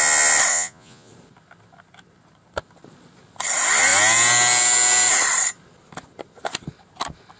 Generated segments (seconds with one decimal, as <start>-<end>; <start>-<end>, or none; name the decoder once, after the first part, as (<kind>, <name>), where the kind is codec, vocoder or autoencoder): 0.5-1.1 (vocoder, Vocos)